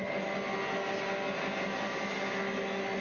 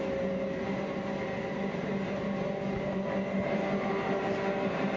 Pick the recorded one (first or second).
first